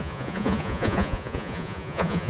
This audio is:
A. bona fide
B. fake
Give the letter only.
B